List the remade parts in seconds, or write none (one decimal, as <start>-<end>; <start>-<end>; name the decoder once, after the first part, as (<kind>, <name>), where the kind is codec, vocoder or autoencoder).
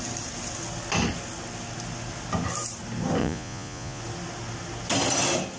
3.2-4.0 (vocoder, Vocos)